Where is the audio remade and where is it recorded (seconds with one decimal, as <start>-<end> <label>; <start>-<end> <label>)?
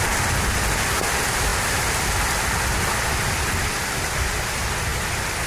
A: 0.0-5.5 recorded